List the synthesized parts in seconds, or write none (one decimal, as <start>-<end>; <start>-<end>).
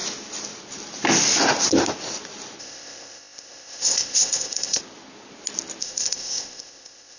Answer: 2.6-4.8; 5.8-7.2